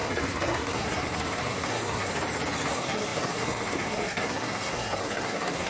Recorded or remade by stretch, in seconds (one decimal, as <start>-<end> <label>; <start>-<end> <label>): 0.0-2.1 remade; 2.1-2.7 recorded; 2.7-5.7 remade